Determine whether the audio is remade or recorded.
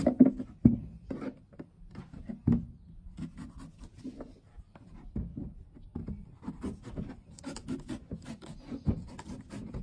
recorded